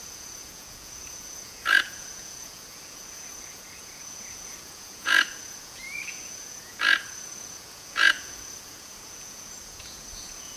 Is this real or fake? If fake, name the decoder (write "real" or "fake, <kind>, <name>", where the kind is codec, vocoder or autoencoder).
fake, vocoder, Vocos